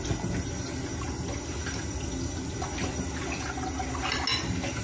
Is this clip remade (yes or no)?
no